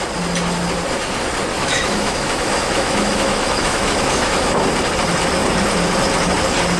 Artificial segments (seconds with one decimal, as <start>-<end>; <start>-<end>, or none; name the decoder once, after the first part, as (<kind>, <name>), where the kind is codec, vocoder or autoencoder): 1.5-4.5 (autoencoder, DAC-VAE)